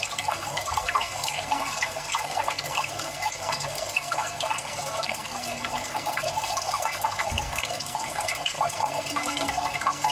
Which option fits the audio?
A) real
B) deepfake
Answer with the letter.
B